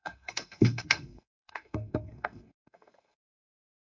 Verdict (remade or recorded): remade